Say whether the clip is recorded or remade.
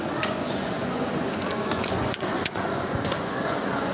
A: remade